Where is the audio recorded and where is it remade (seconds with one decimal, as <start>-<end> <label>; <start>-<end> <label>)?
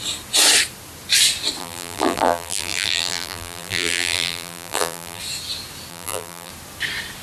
0.0-1.6 recorded; 1.6-5.2 remade; 5.2-5.9 recorded; 5.9-6.5 remade; 6.5-7.2 recorded